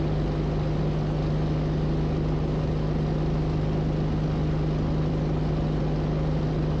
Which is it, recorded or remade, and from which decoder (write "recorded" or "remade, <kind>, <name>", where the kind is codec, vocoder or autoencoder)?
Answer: recorded